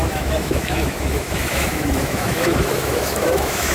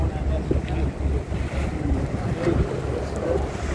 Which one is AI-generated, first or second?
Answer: first